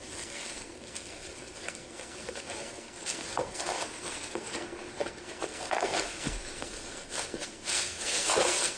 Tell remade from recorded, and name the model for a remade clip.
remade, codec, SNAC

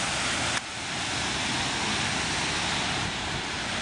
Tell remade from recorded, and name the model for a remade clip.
recorded